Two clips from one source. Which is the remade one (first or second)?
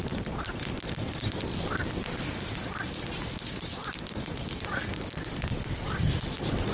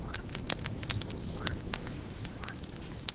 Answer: second